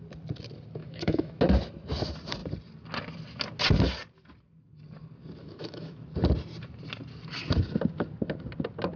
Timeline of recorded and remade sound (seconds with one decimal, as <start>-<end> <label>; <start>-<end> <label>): 0.0-0.8 recorded; 0.8-1.4 remade; 1.4-5.4 recorded; 5.4-6.0 remade; 6.0-9.0 recorded